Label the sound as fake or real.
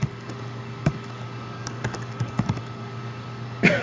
fake